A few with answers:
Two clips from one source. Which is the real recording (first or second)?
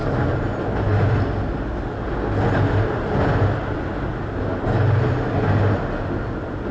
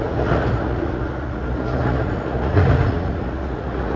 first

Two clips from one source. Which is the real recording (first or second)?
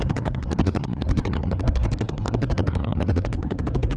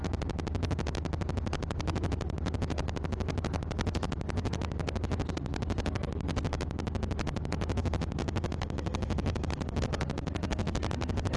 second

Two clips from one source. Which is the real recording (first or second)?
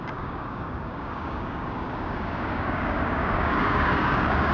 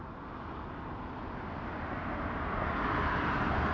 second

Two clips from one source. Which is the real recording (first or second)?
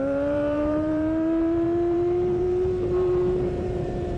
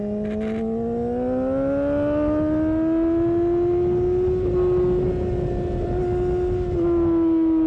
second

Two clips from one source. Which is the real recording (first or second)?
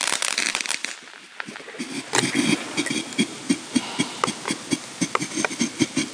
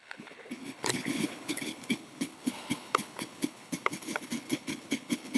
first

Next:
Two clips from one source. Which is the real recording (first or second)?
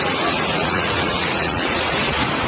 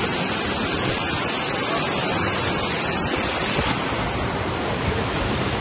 second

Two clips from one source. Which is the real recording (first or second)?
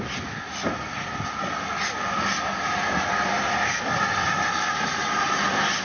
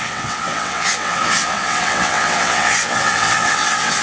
first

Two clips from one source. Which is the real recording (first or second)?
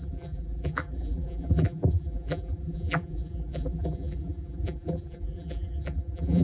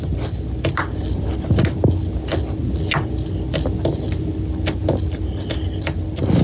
second